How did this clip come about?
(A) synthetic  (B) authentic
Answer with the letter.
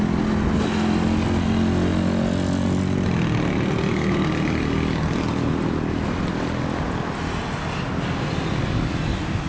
B